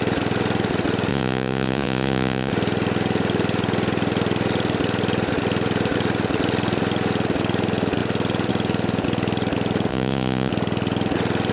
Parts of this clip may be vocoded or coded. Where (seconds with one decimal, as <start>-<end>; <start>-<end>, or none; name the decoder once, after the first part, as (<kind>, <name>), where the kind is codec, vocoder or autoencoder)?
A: 1.1-2.5 (vocoder, Vocos); 9.9-10.5